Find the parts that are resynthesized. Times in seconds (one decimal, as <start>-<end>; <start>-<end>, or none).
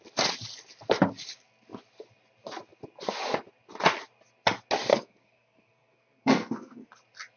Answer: 4.9-6.9